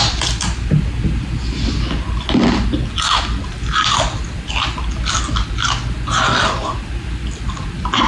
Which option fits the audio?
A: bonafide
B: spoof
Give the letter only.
A